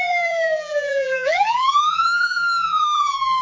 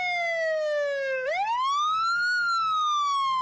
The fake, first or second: first